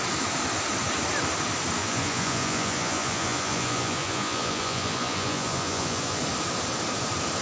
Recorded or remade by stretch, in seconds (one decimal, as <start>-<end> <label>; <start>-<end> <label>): 0.0-1.8 recorded; 1.8-6.2 remade; 6.2-7.4 recorded